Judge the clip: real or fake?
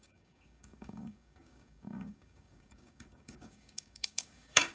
fake